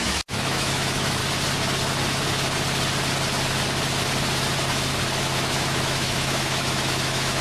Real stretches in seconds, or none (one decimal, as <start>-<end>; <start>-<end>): 1.2-5.2